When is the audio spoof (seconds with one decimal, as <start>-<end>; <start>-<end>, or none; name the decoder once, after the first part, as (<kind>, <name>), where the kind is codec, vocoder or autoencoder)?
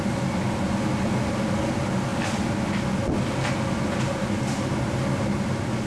none